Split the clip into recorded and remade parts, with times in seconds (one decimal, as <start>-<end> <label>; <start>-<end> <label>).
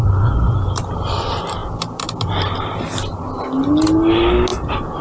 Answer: 0.0-5.0 recorded